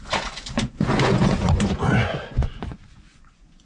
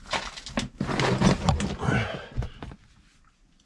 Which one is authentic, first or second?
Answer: second